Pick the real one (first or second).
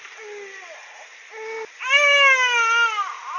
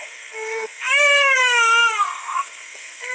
first